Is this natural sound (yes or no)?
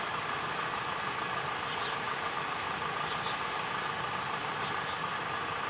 yes